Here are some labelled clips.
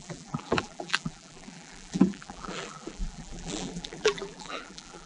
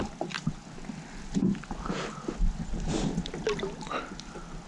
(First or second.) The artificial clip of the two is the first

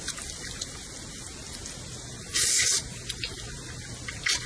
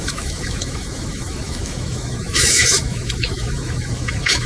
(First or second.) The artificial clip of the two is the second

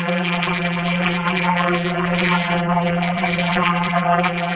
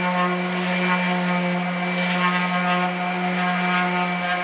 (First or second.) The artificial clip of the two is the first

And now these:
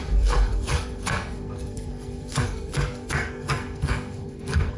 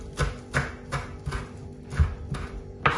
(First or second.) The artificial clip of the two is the first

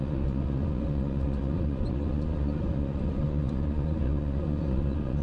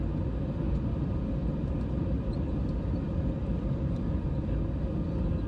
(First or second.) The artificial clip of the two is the first